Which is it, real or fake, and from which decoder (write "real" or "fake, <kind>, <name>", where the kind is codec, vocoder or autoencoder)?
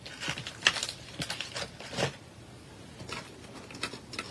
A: real